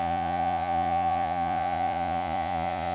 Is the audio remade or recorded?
remade